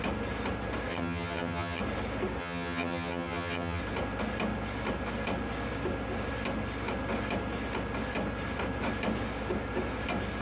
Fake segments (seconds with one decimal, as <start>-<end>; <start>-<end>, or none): 0.9-1.8; 2.4-3.8